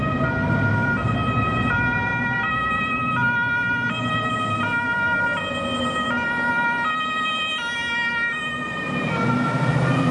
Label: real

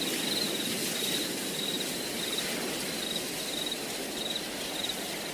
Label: real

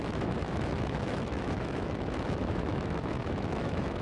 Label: fake